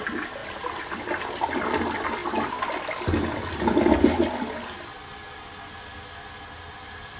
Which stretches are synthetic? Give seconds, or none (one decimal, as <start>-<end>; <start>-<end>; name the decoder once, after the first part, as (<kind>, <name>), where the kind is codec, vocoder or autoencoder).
none